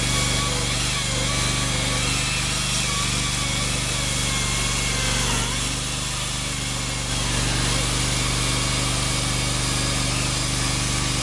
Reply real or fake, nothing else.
real